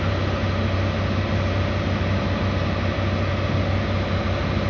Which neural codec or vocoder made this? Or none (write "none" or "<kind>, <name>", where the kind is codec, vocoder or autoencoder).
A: none